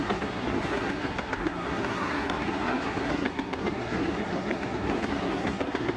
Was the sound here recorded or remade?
remade